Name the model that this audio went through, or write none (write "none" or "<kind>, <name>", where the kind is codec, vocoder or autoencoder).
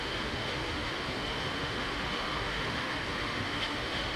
autoencoder, DAC-VAE